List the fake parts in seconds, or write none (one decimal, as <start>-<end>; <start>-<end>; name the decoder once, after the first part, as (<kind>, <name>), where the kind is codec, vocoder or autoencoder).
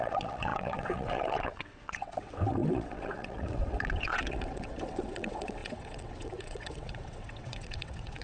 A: 0.0-8.2 (vocoder, WaveNeXt)